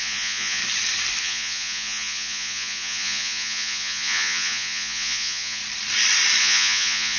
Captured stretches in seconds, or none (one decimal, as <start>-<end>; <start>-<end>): 0.6-1.2; 5.6-6.4